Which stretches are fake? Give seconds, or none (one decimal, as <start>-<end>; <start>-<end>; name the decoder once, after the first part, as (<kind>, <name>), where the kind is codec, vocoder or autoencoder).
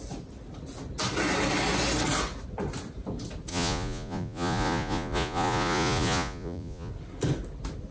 3.5-6.9 (vocoder, Vocos)